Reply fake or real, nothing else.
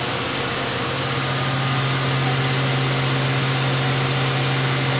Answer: real